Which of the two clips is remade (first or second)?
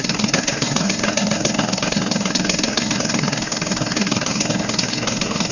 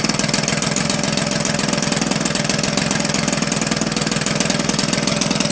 first